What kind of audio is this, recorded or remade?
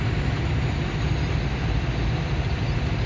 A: recorded